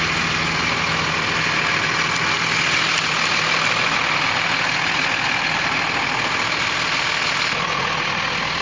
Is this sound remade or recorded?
recorded